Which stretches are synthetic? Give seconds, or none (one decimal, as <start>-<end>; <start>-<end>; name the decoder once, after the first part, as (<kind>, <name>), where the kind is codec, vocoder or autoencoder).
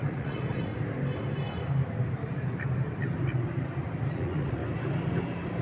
0.0-0.7 (vocoder, Vocos); 4.1-4.6